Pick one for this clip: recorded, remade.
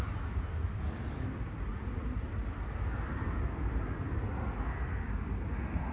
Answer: recorded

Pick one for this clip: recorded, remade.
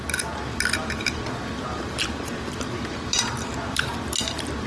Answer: recorded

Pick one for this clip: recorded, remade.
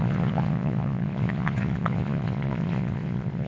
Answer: remade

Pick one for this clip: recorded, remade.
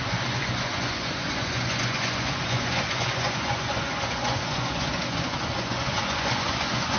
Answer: remade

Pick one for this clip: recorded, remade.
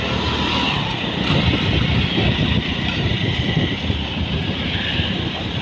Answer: recorded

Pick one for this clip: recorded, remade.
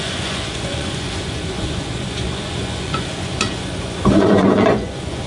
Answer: remade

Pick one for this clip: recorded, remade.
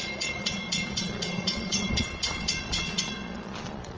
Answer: remade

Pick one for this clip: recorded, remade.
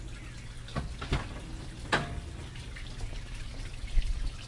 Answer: recorded